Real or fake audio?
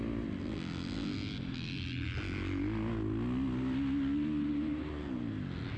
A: real